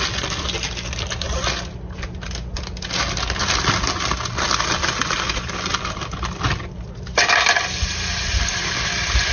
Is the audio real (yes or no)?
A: yes